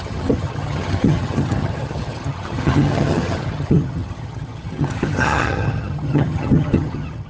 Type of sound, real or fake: fake